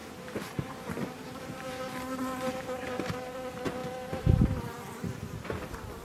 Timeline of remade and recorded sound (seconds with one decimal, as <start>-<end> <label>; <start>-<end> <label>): 0.0-3.3 remade; 3.3-3.8 recorded; 3.8-4.8 remade; 4.8-6.0 recorded